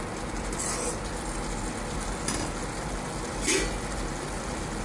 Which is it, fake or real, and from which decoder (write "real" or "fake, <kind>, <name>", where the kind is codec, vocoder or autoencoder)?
real